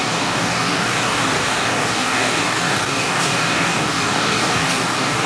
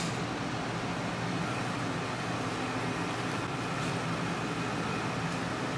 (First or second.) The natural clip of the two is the second